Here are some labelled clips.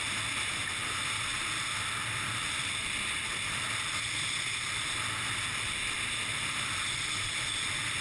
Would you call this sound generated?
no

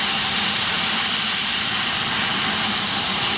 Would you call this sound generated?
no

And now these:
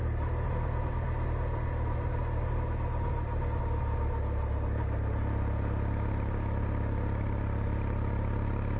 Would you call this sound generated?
no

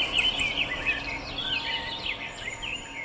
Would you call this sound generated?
no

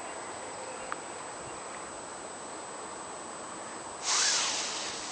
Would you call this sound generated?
no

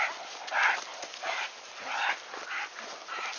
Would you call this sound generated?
no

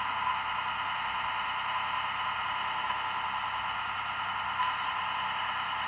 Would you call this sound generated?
no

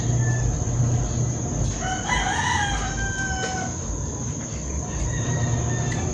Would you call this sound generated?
no